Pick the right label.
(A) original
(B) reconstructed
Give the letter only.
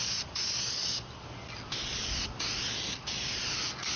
A